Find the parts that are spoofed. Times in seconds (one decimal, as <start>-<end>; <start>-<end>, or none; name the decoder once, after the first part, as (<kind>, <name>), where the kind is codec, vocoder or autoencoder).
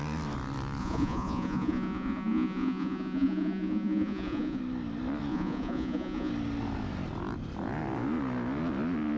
0.8-4.6 (vocoder, Vocos); 5.3-6.3